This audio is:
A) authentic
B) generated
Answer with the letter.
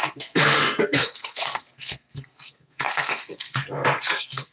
B